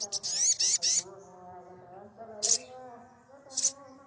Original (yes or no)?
yes